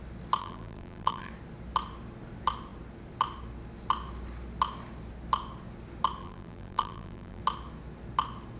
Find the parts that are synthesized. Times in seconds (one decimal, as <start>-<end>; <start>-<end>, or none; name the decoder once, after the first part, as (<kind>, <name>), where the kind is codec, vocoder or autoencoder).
0.4-1.3 (vocoder, BigVGAN v2); 6.2-7.4